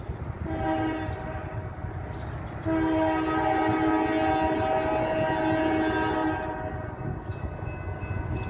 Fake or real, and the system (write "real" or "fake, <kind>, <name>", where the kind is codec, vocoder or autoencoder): real